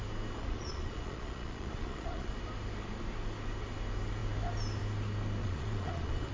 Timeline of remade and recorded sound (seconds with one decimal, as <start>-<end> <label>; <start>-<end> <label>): 0.0-0.4 recorded; 0.4-2.3 remade; 2.3-5.4 recorded; 5.4-6.3 remade